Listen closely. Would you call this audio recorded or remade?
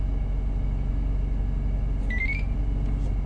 recorded